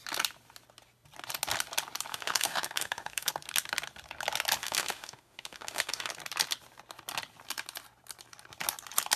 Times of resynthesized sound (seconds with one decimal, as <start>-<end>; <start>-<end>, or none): 2.1-3.3; 4.6-6.1